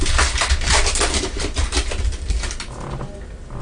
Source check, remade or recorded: recorded